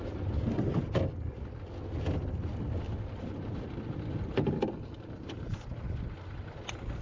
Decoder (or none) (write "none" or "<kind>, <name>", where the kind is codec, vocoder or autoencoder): none